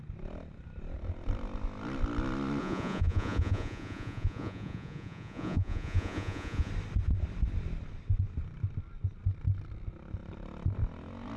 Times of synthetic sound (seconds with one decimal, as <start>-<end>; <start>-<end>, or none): 2.6-6.7